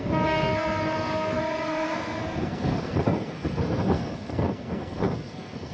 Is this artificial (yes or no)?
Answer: yes